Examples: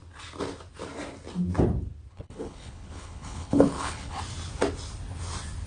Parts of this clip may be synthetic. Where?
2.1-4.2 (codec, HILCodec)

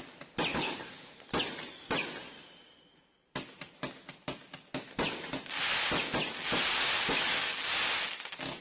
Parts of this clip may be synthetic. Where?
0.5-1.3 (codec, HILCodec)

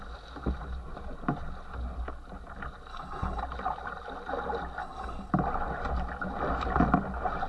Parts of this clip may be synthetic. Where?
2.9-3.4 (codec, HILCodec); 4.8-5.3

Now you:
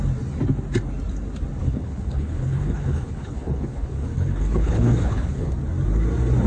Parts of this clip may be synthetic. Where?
1.6-5.5 (codec, HILCodec)

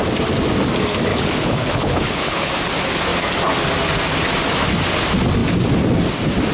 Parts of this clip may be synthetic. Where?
1.1-2.5 (codec, HILCodec)